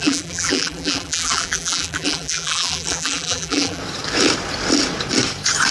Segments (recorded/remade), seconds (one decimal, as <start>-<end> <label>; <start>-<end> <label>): 0.0-3.8 remade; 3.8-5.7 recorded

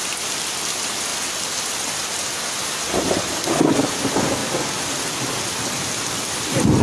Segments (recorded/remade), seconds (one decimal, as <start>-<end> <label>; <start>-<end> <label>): 0.0-1.1 remade; 1.1-3.5 recorded; 3.5-4.4 remade; 4.4-5.5 recorded; 5.5-6.8 remade

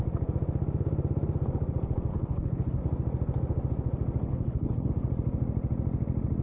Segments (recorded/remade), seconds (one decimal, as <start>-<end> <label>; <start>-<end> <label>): 0.0-2.1 recorded; 2.1-2.8 remade; 2.8-4.3 recorded; 4.3-4.9 remade; 4.9-6.4 recorded

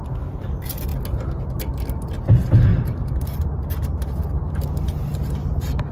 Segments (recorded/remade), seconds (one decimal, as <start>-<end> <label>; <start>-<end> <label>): 0.0-2.7 recorded; 2.7-4.3 remade; 4.3-5.9 recorded

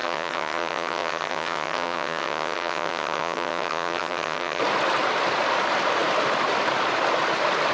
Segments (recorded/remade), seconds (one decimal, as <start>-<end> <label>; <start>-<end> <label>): 0.0-4.6 remade; 4.6-7.7 recorded

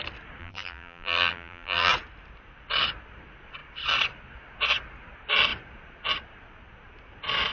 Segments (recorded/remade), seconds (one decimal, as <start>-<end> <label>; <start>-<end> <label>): 0.0-0.4 recorded; 0.4-1.9 remade; 1.9-7.5 recorded

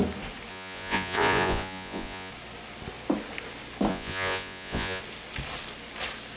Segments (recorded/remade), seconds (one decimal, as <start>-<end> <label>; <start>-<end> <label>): 0.0-0.5 recorded; 0.5-2.3 remade; 2.3-3.9 recorded; 3.9-5.0 remade; 5.0-6.4 recorded

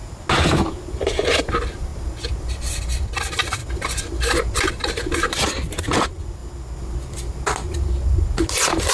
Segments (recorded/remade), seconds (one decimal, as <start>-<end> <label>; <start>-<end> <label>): 0.0-1.4 recorded; 1.4-3.6 remade; 3.6-4.7 recorded; 4.7-6.4 remade; 6.4-8.9 recorded